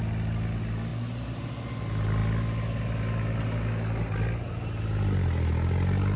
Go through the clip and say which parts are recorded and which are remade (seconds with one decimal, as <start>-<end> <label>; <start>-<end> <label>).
0.0-6.2 recorded